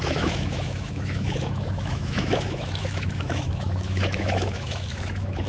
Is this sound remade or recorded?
remade